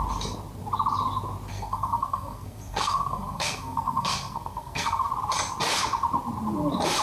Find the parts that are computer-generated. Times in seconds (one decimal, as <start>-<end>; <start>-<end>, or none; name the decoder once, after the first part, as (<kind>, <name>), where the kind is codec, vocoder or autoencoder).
1.5-5.1 (codec, SNAC)